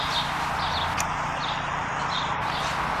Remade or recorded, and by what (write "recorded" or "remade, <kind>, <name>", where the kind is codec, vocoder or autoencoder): remade, vocoder, BigVGAN v2